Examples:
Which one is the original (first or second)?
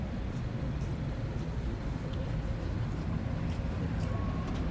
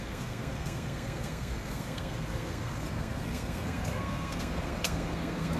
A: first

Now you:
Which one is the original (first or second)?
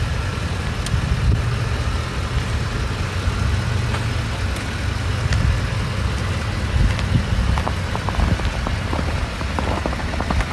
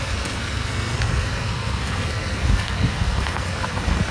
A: first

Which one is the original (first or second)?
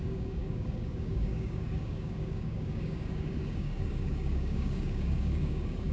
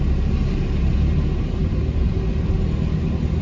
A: second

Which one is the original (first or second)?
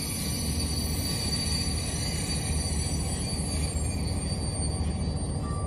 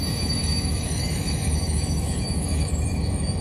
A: first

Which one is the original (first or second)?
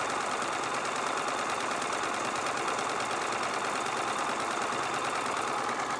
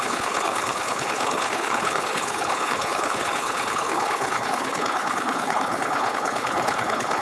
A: first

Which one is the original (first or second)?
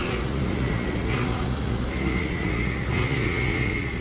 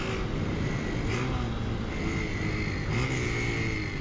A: second